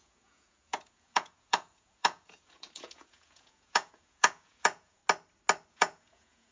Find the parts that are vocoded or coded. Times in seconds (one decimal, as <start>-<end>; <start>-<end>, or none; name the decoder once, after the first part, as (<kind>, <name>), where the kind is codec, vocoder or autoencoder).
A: 0.0-5.0 (vocoder, Vocos); 5.7-6.5